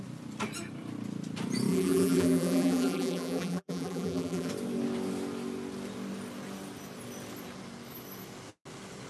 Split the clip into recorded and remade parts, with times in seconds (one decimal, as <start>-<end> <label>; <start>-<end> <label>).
0.0-1.7 recorded; 1.7-4.5 remade; 4.5-9.1 recorded